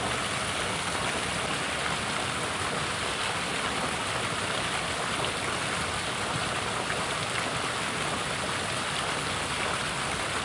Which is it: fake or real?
real